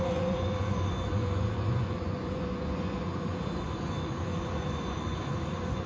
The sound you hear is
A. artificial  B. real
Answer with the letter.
A